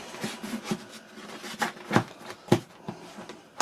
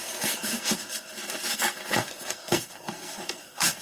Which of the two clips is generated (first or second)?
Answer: second